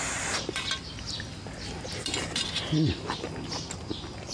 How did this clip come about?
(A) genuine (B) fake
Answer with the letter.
A